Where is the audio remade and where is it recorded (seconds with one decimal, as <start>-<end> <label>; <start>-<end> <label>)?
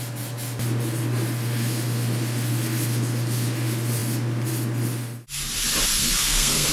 0.0-6.0 recorded; 6.0-6.7 remade